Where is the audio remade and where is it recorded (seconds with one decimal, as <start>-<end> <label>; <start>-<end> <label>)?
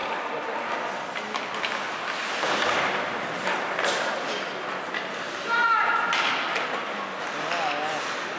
0.0-8.4 recorded